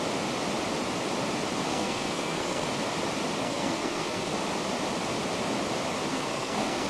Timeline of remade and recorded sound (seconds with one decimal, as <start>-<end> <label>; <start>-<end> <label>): 0.0-1.7 recorded; 1.7-2.7 remade; 2.7-3.4 recorded; 3.4-4.3 remade; 4.3-6.1 recorded; 6.1-6.9 remade